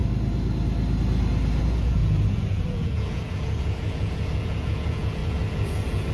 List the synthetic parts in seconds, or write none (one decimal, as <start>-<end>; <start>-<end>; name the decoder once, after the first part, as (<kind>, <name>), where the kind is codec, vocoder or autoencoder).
1.6-6.1 (vocoder, Vocos)